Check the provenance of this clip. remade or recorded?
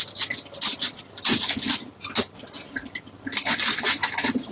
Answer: recorded